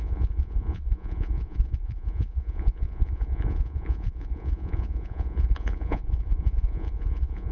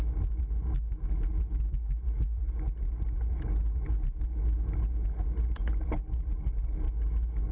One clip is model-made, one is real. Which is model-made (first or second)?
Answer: first